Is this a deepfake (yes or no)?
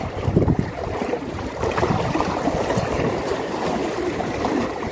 yes